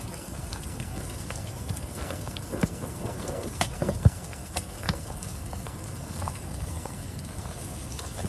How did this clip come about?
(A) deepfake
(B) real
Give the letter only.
A